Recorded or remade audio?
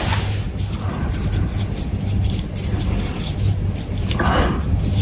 recorded